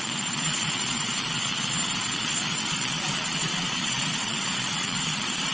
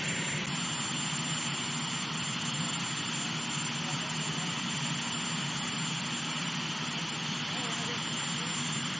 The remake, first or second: first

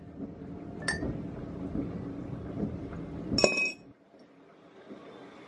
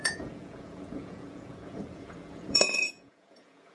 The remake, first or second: second